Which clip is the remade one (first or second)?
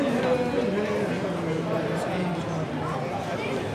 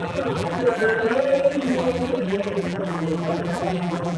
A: second